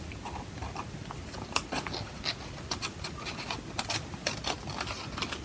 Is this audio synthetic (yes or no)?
no